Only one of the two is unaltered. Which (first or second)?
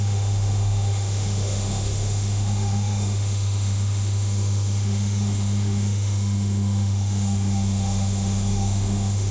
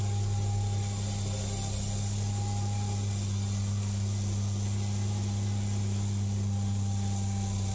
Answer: second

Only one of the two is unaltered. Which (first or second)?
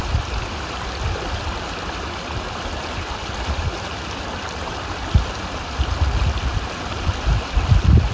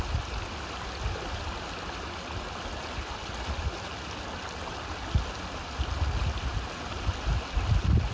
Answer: second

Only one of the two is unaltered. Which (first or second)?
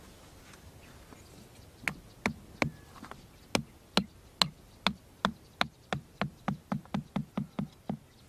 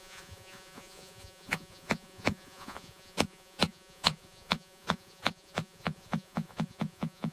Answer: first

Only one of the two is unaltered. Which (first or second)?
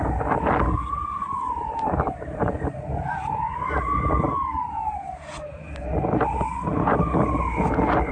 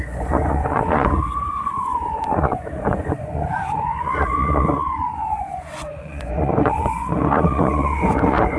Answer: first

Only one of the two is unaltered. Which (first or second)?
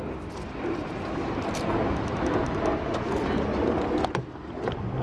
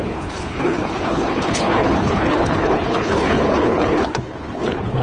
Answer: first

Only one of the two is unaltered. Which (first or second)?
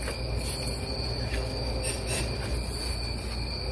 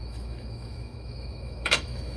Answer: first